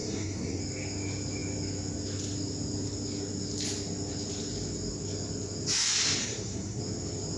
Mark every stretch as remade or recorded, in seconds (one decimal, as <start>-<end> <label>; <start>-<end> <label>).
0.0-0.6 remade; 0.6-6.2 recorded; 6.2-6.8 remade; 6.8-7.4 recorded